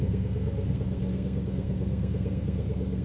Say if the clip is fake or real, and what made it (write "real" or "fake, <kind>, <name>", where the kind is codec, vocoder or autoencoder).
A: fake, codec, SNAC